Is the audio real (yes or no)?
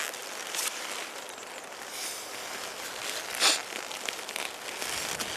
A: yes